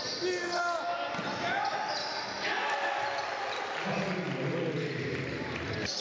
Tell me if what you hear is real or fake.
real